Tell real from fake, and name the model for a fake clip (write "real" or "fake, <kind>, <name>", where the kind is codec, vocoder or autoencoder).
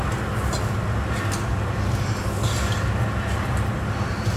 real